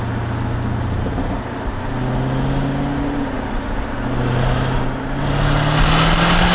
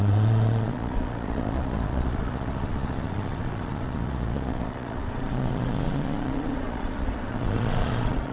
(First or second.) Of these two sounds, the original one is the first